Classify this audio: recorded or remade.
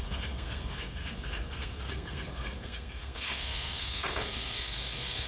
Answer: remade